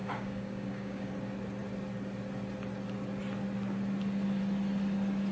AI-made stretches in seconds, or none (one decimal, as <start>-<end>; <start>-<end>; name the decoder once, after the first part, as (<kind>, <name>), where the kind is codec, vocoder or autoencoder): 0.0-1.1 (codec, DAC)